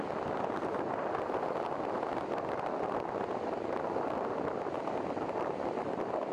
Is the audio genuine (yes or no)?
yes